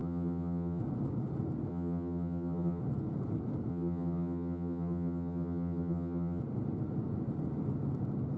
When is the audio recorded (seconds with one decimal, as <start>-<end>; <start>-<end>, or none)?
0.8-1.7; 2.8-3.7; 6.4-8.4